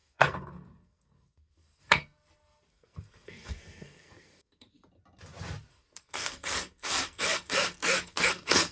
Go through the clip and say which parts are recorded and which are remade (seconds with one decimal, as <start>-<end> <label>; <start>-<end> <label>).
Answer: 0.0-4.8 remade; 4.8-5.7 recorded; 5.7-8.7 remade